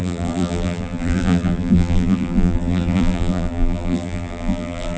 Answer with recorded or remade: remade